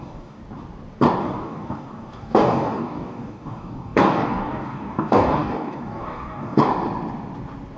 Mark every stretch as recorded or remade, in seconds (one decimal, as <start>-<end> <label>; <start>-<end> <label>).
0.0-0.4 remade; 0.4-1.2 recorded; 1.2-6.7 remade; 6.7-7.8 recorded

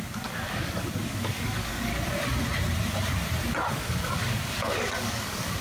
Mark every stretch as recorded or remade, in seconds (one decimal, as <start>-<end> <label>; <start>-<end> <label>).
0.0-1.9 remade; 1.9-3.7 recorded; 3.7-5.6 remade

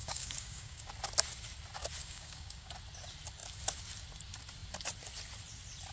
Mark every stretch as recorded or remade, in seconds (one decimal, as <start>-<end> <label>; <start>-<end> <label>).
0.0-0.9 remade; 0.9-2.0 recorded; 2.0-2.7 remade; 2.7-5.9 recorded

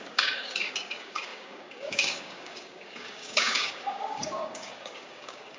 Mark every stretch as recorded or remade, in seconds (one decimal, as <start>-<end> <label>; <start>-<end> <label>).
0.0-5.6 remade

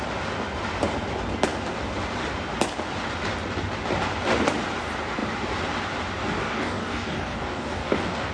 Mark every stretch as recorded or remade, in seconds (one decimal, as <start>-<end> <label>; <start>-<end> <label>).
0.0-6.4 recorded; 6.4-8.3 remade

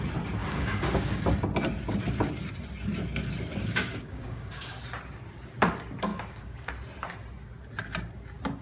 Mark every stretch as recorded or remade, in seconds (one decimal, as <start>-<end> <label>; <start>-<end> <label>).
0.0-0.4 recorded; 0.4-1.2 remade; 1.2-3.5 recorded; 3.5-4.7 remade; 4.7-6.1 recorded; 6.1-6.7 remade; 6.7-8.6 recorded

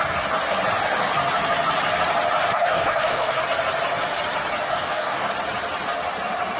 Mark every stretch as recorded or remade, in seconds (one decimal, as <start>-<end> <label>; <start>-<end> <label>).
0.0-2.5 recorded; 2.5-3.4 remade; 3.4-4.7 recorded; 4.7-5.3 remade; 5.3-6.6 recorded